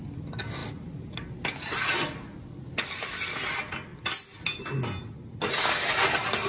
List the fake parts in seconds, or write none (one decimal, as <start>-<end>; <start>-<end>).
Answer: none